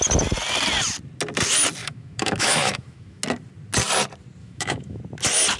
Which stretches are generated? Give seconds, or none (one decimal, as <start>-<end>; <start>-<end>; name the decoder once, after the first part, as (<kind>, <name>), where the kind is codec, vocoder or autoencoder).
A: 1.8-3.2 (autoencoder, DAC-VAE); 4.4-5.0